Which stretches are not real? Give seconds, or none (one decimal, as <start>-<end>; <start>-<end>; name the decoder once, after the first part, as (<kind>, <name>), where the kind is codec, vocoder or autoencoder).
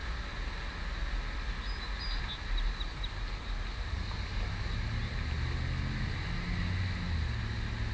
none